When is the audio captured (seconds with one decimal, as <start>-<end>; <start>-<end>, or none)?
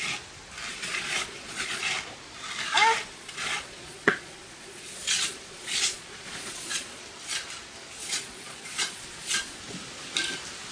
0.0-0.7; 1.8-3.0; 7.0-8.0; 9.6-10.7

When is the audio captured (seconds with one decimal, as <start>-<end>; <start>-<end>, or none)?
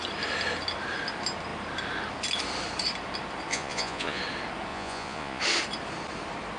0.0-3.5; 4.2-4.7; 5.4-6.6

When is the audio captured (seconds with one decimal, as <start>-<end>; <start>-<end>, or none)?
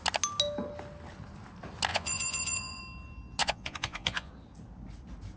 0.0-1.9; 2.8-3.4; 4.3-5.4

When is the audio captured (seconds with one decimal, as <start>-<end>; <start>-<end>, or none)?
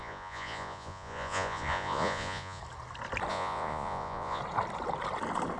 2.6-3.3; 4.4-5.6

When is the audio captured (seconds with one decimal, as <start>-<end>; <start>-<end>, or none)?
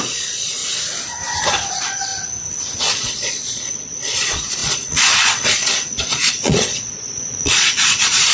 0.6-1.7; 2.1-2.8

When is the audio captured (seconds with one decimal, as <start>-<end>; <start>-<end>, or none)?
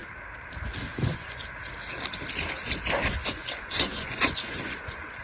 0.0-0.9; 1.4-3.2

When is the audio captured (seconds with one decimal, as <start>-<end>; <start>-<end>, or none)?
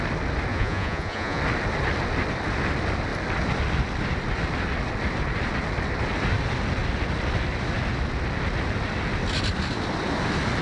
0.0-0.5; 1.4-10.6